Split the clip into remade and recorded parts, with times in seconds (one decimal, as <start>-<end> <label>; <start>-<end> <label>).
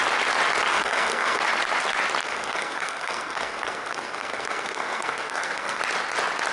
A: 0.0-0.7 recorded; 0.7-1.4 remade; 1.4-2.2 recorded; 2.2-5.8 remade; 5.8-6.5 recorded